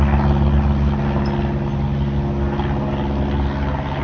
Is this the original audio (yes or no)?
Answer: yes